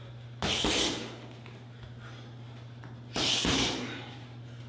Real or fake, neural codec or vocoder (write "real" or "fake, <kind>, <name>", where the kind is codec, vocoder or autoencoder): real